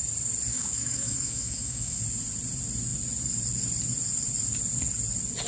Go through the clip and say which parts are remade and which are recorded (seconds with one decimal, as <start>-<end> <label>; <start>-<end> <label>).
0.0-0.5 recorded; 0.5-2.0 remade; 2.0-5.5 recorded